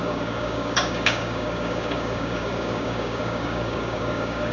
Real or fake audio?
fake